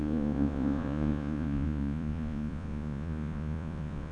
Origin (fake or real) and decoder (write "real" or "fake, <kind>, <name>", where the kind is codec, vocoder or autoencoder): fake, vocoder, Vocos